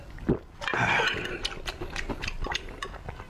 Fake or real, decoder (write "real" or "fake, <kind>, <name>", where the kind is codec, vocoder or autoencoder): real